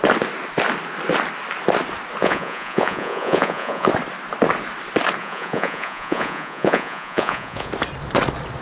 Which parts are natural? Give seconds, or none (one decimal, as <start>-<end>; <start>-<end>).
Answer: 0.0-2.2; 3.9-5.2; 7.7-8.6